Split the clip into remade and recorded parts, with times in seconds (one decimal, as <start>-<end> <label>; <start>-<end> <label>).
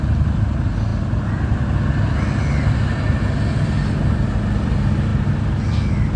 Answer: 0.0-6.2 recorded